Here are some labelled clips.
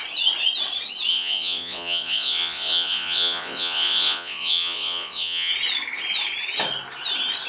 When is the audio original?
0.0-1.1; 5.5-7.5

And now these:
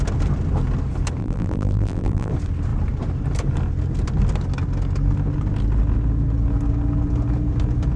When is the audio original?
0.0-1.2; 2.3-8.0

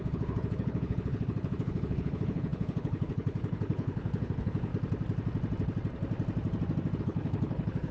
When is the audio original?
4.7-7.0

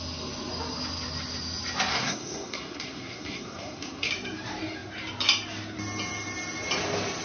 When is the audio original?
0.0-1.9; 4.1-7.2

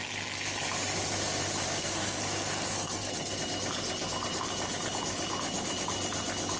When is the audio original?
0.0-1.8; 3.4-6.6

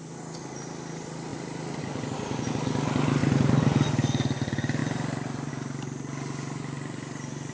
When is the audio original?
0.0-1.3; 1.8-3.2; 3.9-4.8; 5.5-7.5

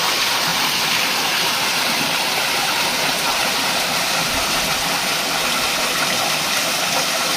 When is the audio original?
0.0-0.5; 4.5-7.4